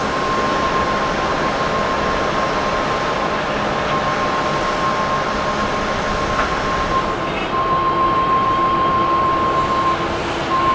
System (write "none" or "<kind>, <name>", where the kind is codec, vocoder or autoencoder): none